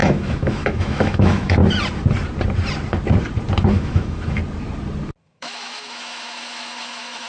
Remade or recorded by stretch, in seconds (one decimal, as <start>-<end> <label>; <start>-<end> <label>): 0.0-1.6 remade; 1.6-3.7 recorded; 3.7-4.4 remade; 4.4-5.2 recorded; 5.2-7.3 remade